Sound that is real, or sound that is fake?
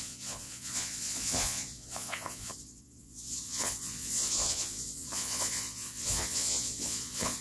fake